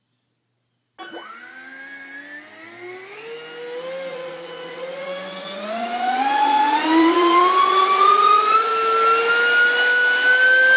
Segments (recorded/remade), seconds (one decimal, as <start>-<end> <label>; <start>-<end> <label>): 0.0-4.1 recorded; 4.1-8.7 remade; 8.7-10.8 recorded